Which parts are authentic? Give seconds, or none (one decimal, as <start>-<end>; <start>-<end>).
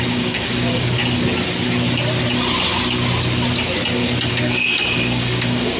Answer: 1.0-4.3